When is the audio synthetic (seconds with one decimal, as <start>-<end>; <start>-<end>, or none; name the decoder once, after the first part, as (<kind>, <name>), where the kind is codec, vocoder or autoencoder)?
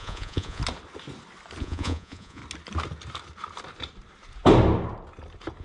0.0-0.6 (vocoder, Vocos); 1.6-2.4